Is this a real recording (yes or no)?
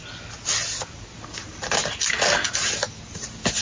yes